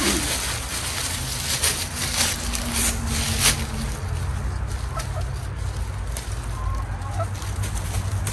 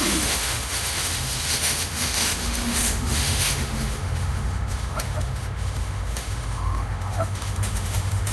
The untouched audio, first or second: first